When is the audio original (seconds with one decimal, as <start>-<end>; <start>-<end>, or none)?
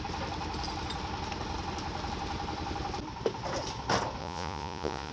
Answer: 0.0-4.2